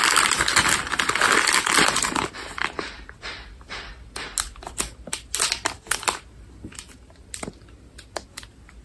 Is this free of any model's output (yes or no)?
yes